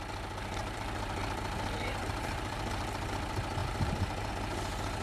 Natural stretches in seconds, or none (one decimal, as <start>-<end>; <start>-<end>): 0.0-0.6; 1.2-2.0; 3.1-3.6; 4.3-5.0